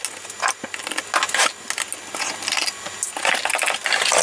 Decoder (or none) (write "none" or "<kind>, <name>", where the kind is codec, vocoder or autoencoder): none